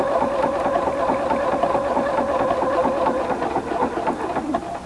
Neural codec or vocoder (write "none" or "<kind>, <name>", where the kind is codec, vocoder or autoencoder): none